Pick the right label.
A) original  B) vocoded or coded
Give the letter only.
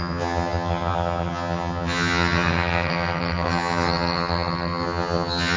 B